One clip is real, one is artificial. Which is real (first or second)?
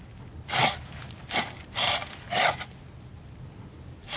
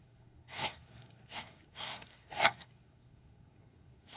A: first